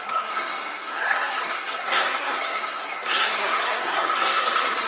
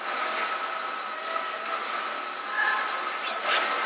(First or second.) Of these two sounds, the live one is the second